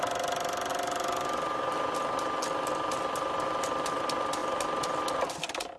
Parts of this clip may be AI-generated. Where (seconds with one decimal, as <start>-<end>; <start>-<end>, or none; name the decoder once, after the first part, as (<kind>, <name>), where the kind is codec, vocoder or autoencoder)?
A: none